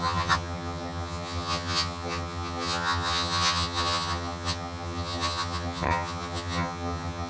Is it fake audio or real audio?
fake